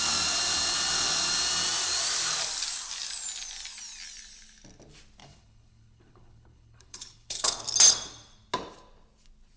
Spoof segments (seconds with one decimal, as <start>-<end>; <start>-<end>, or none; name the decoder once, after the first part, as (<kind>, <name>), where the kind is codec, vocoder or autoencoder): 5.2-7.6 (codec, HILCodec)